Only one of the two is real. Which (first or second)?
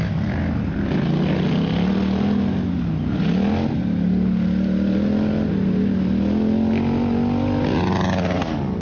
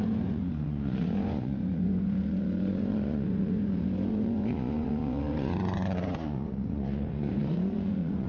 first